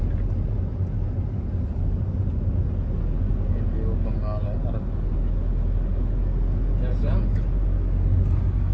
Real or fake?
real